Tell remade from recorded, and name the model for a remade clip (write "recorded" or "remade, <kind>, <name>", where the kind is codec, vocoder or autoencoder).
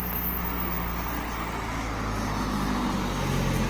recorded